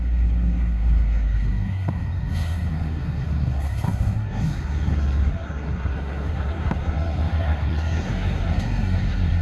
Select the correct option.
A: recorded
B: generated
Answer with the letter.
B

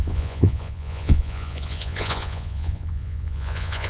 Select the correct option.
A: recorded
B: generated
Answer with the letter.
B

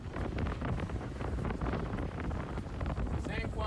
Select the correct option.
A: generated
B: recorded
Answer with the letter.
A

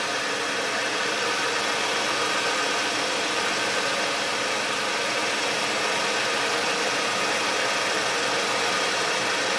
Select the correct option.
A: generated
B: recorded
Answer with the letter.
B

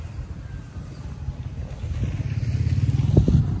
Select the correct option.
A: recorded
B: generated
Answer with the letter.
A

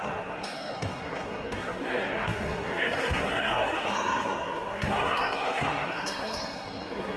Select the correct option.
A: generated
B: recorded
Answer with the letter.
A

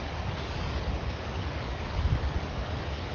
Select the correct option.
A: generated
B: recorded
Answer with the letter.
A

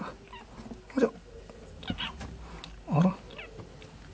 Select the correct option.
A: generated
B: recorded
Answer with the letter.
B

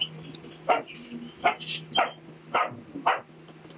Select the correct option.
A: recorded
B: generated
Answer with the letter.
A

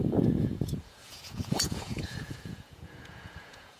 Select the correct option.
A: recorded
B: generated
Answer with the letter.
B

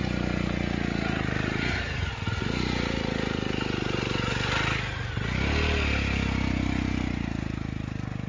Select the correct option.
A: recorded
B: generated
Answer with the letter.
A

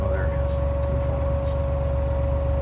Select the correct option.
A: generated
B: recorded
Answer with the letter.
B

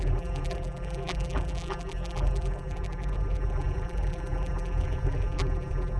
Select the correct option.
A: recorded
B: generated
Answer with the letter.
B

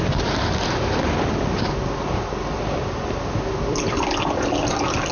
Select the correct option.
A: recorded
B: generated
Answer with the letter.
A